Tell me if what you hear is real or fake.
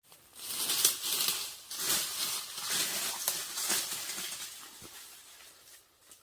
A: real